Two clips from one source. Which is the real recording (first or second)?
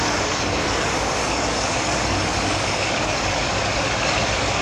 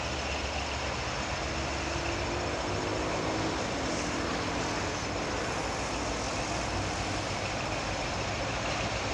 second